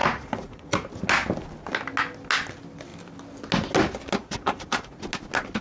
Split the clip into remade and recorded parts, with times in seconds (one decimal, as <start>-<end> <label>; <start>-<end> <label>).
0.0-0.9 remade; 0.9-4.2 recorded; 4.2-5.0 remade; 5.0-5.6 recorded